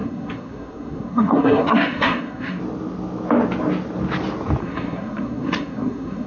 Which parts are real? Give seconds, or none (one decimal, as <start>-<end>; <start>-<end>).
2.6-4.6